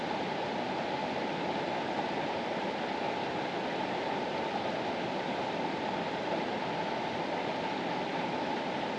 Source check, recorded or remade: recorded